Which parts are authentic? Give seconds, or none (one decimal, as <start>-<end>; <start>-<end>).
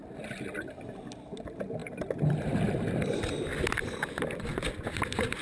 0.0-1.8; 2.7-5.4